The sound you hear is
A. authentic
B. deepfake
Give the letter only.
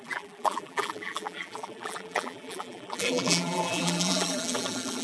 B